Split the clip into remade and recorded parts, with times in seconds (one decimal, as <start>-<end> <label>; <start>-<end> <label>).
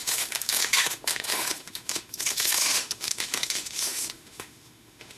0.0-5.2 remade